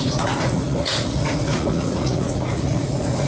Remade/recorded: remade